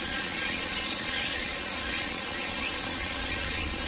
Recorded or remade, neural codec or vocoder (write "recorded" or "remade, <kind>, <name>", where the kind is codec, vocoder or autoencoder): remade, vocoder, Vocos